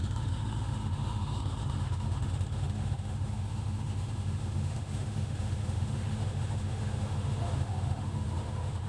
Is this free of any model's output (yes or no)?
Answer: no